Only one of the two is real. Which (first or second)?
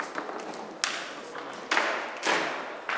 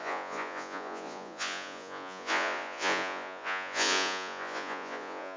first